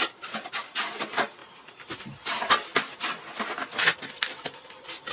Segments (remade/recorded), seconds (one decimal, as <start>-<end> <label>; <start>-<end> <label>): 0.0-1.4 recorded; 1.4-2.3 remade; 2.3-5.1 recorded